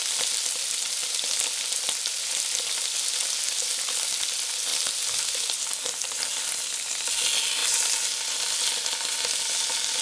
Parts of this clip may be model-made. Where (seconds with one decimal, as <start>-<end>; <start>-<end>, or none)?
none